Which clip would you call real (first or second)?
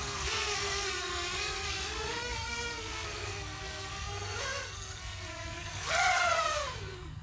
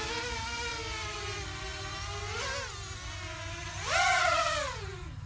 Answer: second